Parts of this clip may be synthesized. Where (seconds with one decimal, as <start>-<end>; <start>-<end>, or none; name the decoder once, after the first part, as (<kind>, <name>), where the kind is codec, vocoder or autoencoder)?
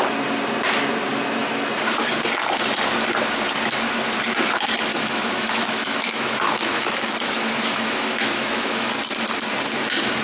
4.9-8.9 (autoencoder, DAC-VAE)